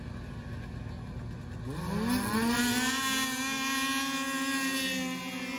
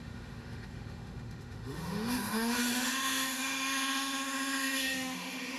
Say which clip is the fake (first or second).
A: second